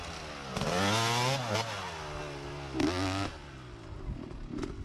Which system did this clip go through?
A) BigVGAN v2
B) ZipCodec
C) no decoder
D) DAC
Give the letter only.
C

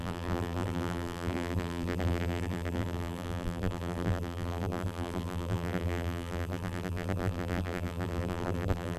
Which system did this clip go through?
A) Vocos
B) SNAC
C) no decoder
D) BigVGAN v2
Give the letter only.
D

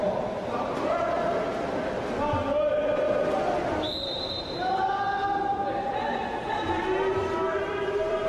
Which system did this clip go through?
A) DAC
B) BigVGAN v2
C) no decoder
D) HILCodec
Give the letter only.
B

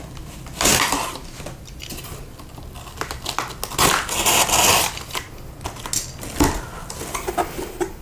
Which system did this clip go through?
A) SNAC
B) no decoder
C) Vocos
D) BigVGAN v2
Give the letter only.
B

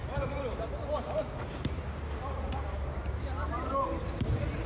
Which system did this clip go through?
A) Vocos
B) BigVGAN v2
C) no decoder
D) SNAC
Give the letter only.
B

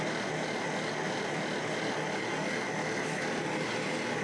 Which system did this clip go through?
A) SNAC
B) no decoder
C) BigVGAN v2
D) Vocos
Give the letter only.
B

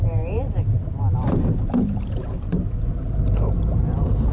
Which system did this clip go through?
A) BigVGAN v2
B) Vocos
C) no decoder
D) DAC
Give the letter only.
A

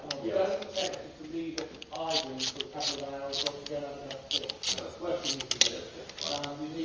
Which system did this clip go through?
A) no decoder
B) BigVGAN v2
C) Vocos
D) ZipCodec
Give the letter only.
A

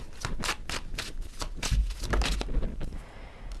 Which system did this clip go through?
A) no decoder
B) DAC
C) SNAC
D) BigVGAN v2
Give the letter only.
A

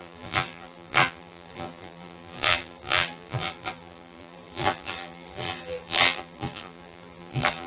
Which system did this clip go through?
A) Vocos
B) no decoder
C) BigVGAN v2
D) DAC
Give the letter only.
C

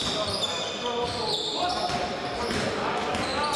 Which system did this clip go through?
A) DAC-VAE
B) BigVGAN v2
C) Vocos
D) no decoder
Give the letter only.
D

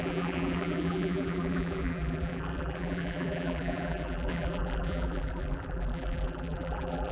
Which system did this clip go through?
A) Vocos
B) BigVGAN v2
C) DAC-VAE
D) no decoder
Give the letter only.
B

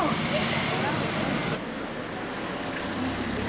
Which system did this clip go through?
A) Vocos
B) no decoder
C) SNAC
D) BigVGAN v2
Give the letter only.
B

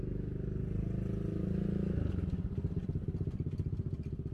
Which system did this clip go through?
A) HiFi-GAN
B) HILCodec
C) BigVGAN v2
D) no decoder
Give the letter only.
D